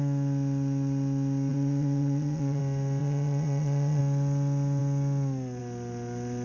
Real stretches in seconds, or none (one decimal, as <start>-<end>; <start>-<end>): 0.0-1.5; 2.6-3.0; 4.0-6.4